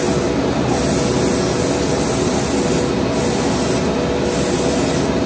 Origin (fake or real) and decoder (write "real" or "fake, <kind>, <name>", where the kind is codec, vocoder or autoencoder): real